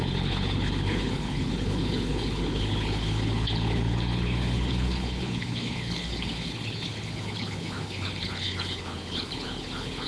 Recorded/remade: remade